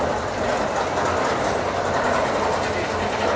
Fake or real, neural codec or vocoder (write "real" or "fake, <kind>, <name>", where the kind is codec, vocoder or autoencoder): real